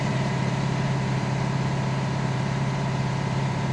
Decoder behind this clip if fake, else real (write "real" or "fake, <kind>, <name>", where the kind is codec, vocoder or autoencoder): fake, vocoder, BigVGAN v2